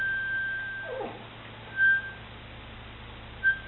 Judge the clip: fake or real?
real